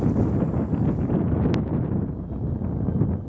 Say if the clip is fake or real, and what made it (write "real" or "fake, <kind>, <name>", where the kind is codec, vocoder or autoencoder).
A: real